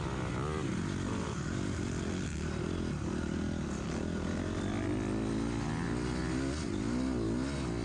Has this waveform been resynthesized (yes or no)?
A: no